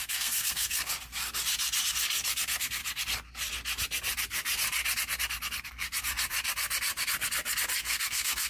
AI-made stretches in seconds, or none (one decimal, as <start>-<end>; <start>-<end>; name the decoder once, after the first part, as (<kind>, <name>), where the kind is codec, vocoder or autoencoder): 0.0-0.9 (codec, SNAC); 2.3-2.8; 7.8-8.5